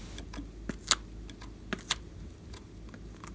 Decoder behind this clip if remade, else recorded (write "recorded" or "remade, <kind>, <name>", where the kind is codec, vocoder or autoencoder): recorded